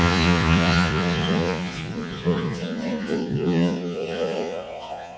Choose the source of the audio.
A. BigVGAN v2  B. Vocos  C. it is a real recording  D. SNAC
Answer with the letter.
B